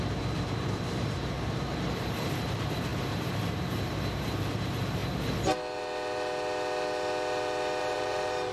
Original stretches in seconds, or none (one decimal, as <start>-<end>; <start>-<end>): 5.0-7.8